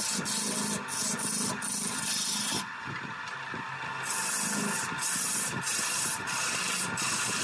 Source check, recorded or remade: recorded